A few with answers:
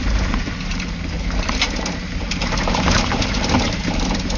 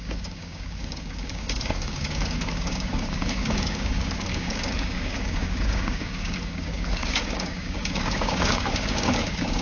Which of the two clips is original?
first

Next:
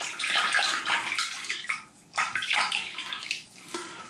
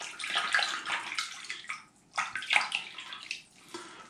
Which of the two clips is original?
second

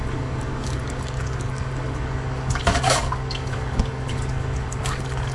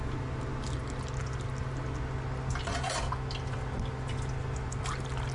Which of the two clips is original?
second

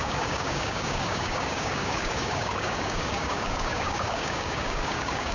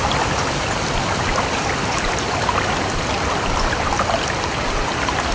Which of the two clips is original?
second